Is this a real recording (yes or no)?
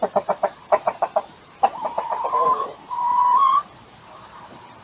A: no